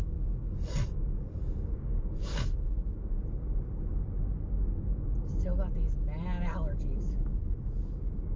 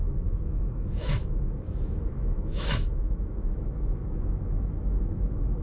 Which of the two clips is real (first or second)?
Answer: first